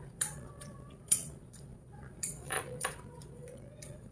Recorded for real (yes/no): no